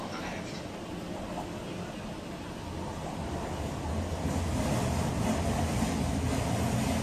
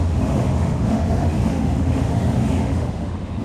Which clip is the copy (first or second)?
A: second